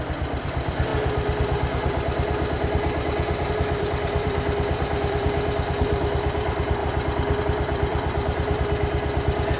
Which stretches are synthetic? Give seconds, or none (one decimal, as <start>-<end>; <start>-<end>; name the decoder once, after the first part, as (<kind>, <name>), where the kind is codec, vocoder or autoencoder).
0.0-0.9 (vocoder, BigVGAN v2); 3.5-6.8; 7.4-9.6